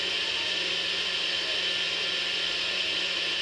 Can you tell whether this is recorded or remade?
remade